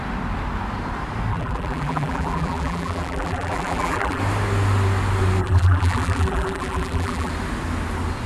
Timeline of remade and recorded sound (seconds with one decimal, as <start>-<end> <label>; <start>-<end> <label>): 0.0-1.3 recorded; 1.3-4.2 remade; 4.2-5.4 recorded; 5.4-7.3 remade; 7.3-8.3 recorded